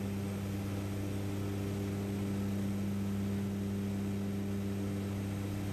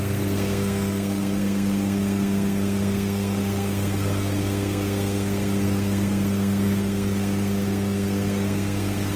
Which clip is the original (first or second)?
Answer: first